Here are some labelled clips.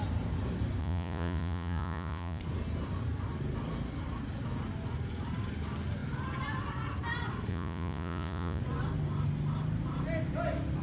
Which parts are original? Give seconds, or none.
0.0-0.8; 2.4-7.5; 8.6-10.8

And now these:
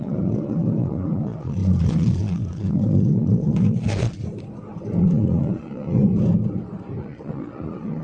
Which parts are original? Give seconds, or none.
4.2-5.0; 6.1-7.0

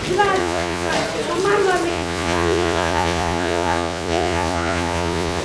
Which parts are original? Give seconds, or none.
0.0-0.4; 0.9-1.9

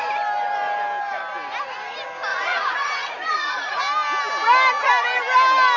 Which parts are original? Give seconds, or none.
0.0-2.3; 3.8-5.8

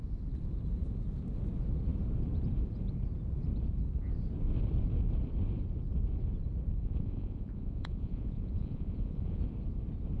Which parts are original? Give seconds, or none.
0.0-6.8; 9.4-10.2